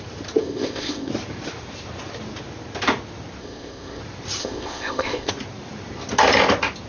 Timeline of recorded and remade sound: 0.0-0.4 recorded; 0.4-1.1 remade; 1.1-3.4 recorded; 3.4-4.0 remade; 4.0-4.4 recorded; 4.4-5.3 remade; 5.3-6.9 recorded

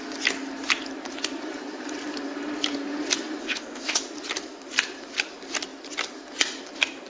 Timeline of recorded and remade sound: 0.0-3.4 recorded; 3.4-4.0 remade; 4.0-7.1 recorded

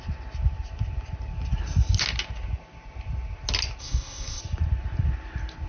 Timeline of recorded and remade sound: 0.0-3.8 recorded; 3.8-4.4 remade; 4.4-5.7 recorded

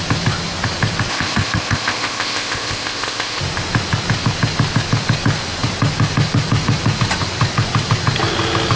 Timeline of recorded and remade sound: 0.0-1.1 recorded; 1.1-3.4 remade; 3.4-8.8 recorded

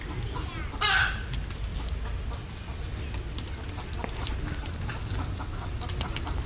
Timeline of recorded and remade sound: 0.0-6.5 recorded